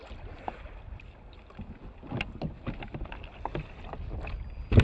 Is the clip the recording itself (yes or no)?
yes